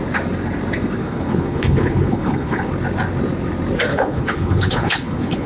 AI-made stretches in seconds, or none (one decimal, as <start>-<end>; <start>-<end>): 1.0-2.7; 3.9-5.5